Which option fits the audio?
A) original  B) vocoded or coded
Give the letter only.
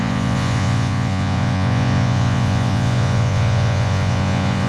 B